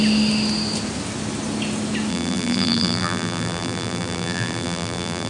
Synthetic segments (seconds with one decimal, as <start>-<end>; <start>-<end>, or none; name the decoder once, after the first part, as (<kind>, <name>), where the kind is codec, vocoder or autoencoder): 2.1-5.3 (vocoder, BigVGAN v2)